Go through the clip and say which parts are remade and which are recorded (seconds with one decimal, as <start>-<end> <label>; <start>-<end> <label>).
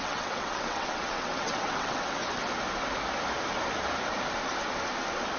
0.0-2.2 remade; 2.2-5.4 recorded